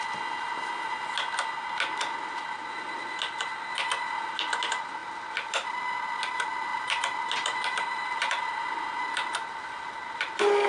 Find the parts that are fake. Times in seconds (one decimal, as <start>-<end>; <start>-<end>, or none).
none